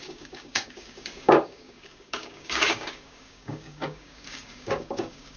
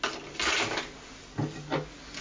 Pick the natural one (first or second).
second